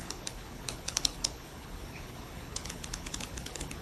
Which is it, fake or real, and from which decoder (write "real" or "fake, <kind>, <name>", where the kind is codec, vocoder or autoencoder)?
fake, codec, HILCodec